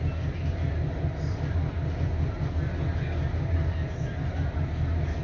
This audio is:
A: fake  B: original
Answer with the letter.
B